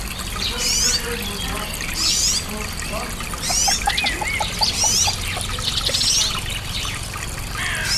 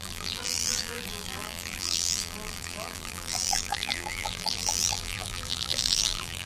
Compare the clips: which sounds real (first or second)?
first